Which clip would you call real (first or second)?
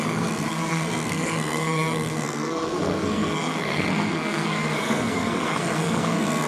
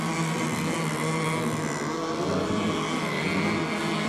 second